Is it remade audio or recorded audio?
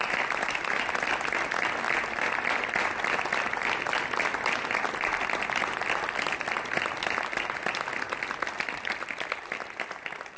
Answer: recorded